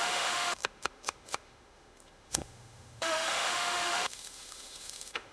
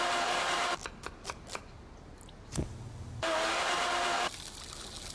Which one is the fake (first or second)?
first